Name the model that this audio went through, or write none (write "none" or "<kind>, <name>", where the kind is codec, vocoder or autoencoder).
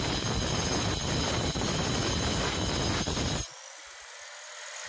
none